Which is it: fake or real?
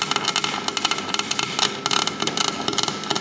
real